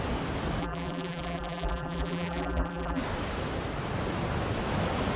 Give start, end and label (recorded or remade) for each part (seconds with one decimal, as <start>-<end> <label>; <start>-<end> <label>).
0.0-0.6 recorded; 0.6-3.0 remade; 3.0-5.2 recorded

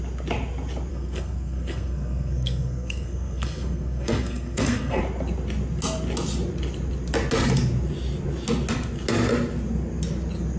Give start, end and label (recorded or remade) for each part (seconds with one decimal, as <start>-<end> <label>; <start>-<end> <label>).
0.0-0.9 recorded; 0.9-5.0 remade; 5.0-10.6 recorded

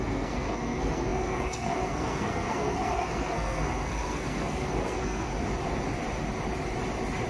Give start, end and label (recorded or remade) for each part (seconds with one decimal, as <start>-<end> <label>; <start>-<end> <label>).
0.0-5.3 remade; 5.3-7.3 recorded